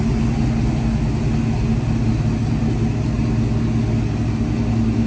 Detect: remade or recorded recorded